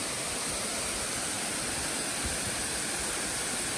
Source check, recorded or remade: recorded